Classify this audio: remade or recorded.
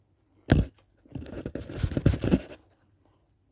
recorded